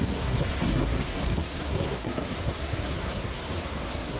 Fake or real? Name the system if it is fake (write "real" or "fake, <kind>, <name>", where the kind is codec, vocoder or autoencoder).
fake, codec, SNAC